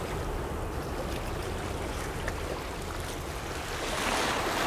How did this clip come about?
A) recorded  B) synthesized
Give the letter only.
A